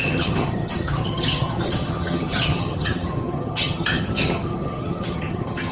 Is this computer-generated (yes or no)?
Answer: yes